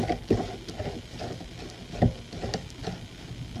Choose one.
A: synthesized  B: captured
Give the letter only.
B